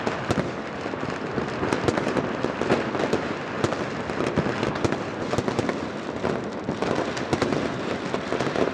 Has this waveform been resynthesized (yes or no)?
no